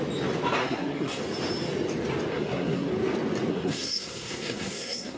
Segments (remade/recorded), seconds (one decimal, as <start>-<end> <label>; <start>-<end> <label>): 0.0-0.6 recorded; 0.6-1.2 remade; 1.2-2.3 recorded; 2.3-2.9 remade; 2.9-3.5 recorded; 3.5-5.2 remade

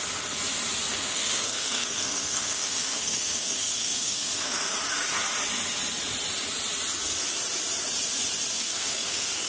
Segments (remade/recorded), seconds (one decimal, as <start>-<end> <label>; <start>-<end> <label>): 0.0-0.9 recorded; 0.9-4.7 remade; 4.7-8.6 recorded; 8.6-9.5 remade

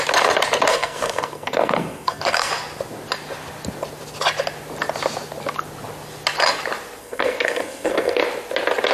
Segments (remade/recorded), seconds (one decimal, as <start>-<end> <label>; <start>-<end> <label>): 0.0-0.7 recorded; 0.7-2.5 remade; 2.5-7.0 recorded; 7.0-8.2 remade; 8.2-8.9 recorded

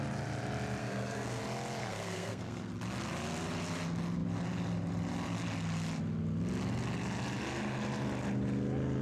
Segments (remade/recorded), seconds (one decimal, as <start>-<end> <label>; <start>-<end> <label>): 0.0-0.8 recorded; 0.8-1.4 remade; 1.4-1.8 recorded; 1.8-2.7 remade; 2.7-9.0 recorded

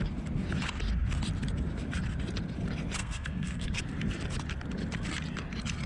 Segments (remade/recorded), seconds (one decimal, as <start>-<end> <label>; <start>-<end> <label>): 0.0-3.0 recorded; 3.0-3.8 remade; 3.8-5.9 recorded